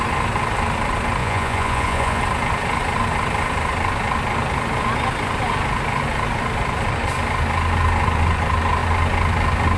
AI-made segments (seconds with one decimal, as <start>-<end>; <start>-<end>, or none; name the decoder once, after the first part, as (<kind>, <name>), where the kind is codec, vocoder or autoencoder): 1.2-2.2 (vocoder, Vocos)